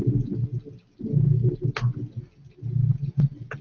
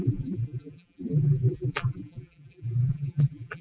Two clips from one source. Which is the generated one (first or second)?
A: second